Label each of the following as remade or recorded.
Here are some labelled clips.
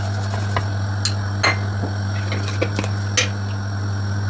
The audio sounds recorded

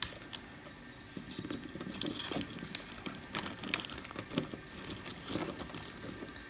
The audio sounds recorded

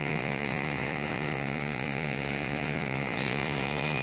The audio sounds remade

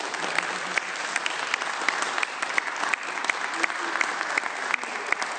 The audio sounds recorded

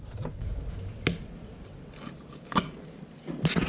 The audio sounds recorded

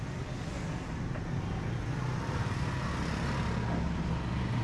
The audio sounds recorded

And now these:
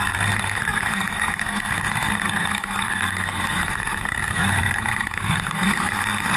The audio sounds remade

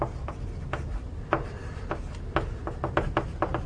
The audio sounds recorded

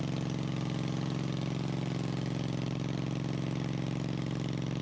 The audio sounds recorded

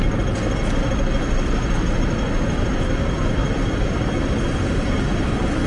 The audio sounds recorded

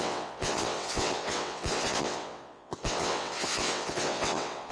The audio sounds remade